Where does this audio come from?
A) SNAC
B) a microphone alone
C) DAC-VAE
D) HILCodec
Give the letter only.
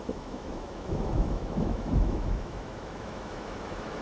C